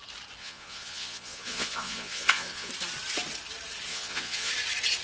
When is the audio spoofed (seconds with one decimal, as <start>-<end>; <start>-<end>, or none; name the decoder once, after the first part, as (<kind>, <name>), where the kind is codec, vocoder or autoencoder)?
0.4-2.7 (vocoder, Vocos); 3.9-4.5